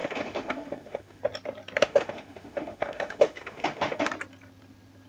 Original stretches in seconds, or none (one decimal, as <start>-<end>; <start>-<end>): 1.2-1.8; 4.1-5.1